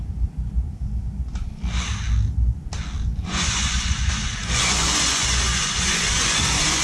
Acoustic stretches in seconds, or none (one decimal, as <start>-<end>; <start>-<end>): 0.0-3.1